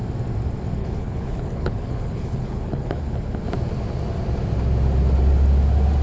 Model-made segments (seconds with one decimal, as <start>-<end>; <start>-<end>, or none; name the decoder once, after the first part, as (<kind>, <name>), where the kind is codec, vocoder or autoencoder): 0.8-3.0 (codec, HILCodec)

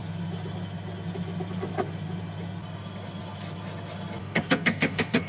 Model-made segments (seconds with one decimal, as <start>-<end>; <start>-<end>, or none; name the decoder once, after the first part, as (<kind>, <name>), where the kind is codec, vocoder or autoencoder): 4.2-5.3 (codec, DAC)